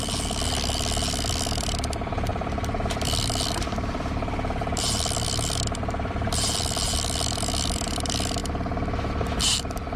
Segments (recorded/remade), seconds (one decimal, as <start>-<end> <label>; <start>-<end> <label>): 0.0-8.4 remade; 8.4-10.0 recorded